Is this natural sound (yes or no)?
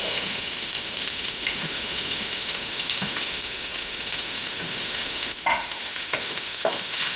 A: no